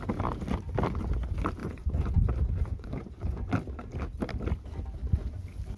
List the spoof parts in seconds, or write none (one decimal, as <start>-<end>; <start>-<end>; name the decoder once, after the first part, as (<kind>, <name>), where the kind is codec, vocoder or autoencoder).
1.6-2.2 (vocoder, Vocos); 2.7-3.5